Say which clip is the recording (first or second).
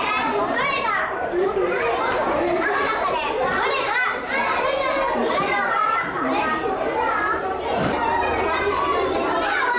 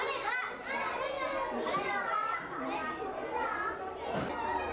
second